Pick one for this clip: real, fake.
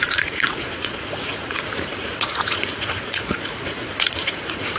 fake